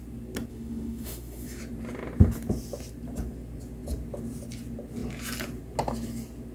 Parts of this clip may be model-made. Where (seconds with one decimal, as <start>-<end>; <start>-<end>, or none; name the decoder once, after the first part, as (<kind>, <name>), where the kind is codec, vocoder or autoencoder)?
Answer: 0.5-1.6 (autoencoder, DAC-VAE)